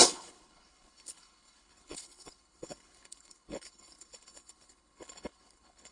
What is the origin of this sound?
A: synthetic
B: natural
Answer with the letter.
A